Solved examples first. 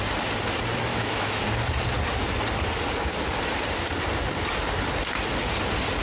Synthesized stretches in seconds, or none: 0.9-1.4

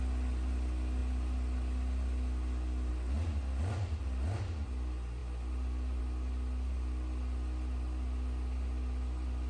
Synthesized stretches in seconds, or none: none

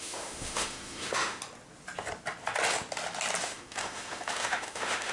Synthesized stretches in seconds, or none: 0.0-1.4; 3.4-5.1

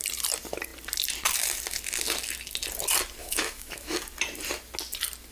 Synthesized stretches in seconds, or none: 3.2-4.0

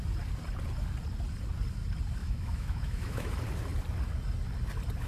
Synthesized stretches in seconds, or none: 2.2-3.3

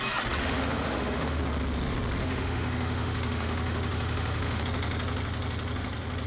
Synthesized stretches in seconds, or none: 0.4-1.4; 2.2-4.6